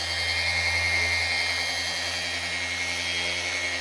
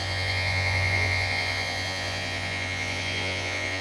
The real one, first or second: first